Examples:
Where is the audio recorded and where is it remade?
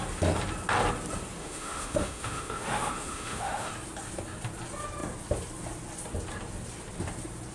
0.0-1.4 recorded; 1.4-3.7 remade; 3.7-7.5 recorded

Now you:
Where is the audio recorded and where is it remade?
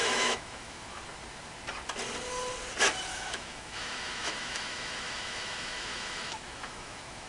0.0-1.0 remade; 1.0-3.1 recorded; 3.1-7.3 remade